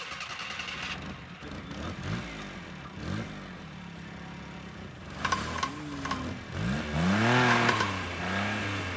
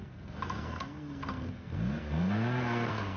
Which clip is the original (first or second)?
first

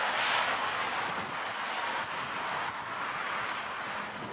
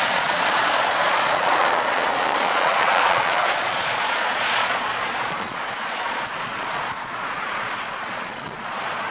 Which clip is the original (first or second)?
first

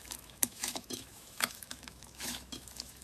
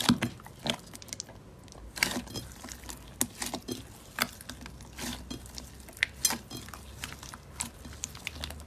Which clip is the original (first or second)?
second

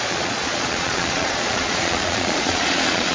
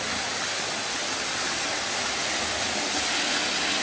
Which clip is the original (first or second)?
second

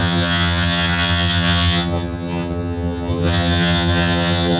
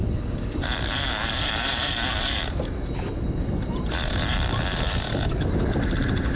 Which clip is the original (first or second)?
second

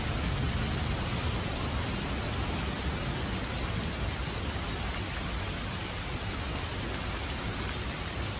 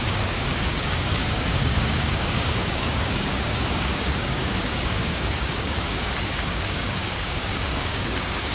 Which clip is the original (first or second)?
first